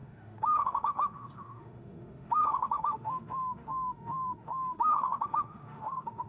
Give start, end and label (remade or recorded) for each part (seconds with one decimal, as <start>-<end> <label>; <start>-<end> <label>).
0.0-6.3 remade